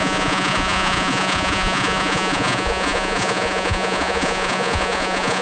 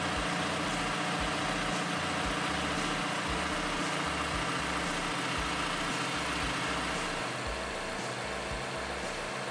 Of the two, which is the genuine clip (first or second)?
second